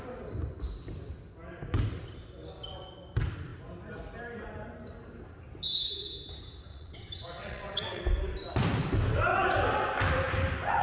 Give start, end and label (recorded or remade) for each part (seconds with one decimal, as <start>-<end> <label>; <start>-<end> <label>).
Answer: 0.0-6.7 recorded; 6.7-8.0 remade; 8.0-10.8 recorded

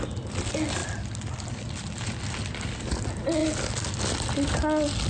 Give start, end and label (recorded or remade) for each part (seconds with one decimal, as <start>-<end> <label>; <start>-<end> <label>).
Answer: 0.0-5.1 recorded

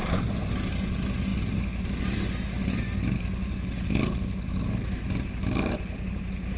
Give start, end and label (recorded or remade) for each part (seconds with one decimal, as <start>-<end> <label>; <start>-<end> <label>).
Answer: 0.0-6.6 recorded

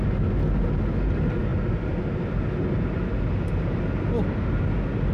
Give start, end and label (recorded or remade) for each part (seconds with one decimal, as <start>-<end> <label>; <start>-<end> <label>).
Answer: 0.0-5.1 recorded

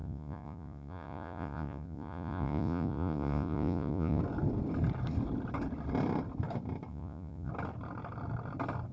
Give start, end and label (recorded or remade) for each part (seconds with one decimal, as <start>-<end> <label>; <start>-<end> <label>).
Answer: 0.0-4.2 remade; 4.2-6.9 recorded; 6.9-7.5 remade; 7.5-8.9 recorded

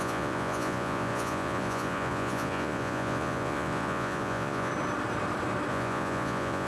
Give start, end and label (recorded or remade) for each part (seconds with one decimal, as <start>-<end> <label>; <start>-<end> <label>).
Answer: 0.0-4.7 remade; 4.7-5.7 recorded; 5.7-6.7 remade

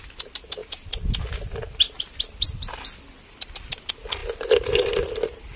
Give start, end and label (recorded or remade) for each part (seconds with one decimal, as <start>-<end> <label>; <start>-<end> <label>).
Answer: 0.0-5.6 recorded

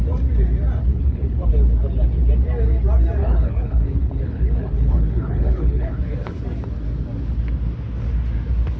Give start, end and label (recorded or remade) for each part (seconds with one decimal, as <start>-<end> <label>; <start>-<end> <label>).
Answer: 0.0-0.9 recorded; 0.9-1.5 remade; 1.5-3.2 recorded; 3.2-6.4 remade; 6.4-8.8 recorded